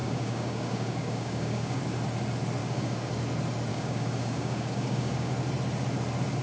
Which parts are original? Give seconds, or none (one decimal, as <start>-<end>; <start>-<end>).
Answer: 1.8-2.6; 3.1-3.7; 5.3-6.4